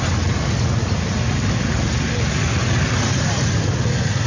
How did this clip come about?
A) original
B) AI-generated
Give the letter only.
A